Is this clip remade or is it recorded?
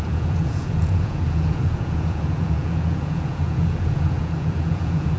remade